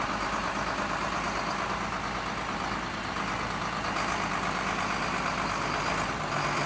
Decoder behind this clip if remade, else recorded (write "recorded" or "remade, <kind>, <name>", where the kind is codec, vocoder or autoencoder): recorded